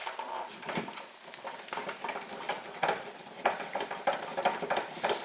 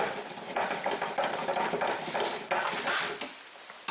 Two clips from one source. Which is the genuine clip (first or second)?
second